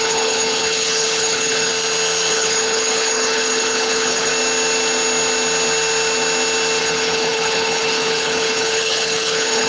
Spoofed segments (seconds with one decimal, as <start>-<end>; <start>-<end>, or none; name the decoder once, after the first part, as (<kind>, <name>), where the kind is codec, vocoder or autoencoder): 0.0-1.7 (codec, HILCodec); 2.3-4.3; 6.8-9.7